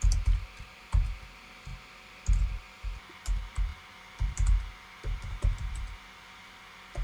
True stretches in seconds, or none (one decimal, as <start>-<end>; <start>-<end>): 1.7-2.4